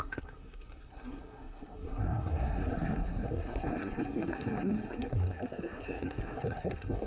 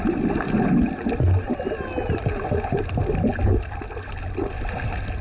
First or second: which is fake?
first